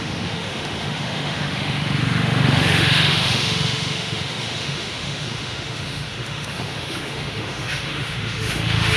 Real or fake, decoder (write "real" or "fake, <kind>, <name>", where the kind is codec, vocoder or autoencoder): fake, autoencoder, DAC-VAE